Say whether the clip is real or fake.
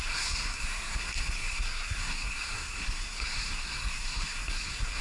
fake